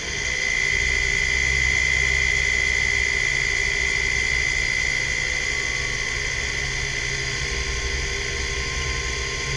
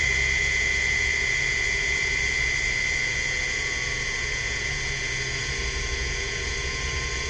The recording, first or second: first